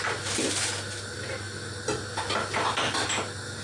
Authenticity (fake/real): real